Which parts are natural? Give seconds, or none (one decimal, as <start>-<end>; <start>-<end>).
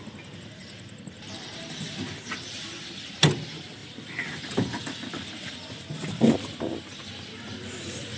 0.0-0.6; 3.2-8.2